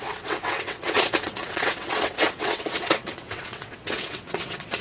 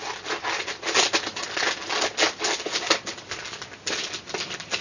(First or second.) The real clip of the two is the second